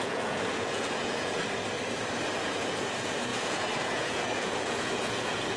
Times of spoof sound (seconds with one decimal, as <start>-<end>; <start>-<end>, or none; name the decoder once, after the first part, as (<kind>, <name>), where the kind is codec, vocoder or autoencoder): 0.0-1.4 (vocoder, Vocos); 2.3-5.6